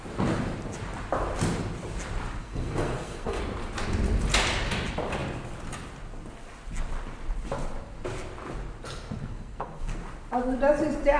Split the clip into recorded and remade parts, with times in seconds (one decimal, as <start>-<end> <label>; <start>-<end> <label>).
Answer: 0.0-2.4 recorded; 2.4-3.4 remade; 3.4-9.2 recorded; 9.2-10.0 remade; 10.0-11.2 recorded